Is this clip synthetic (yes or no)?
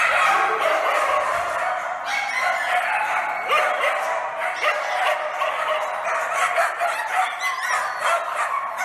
no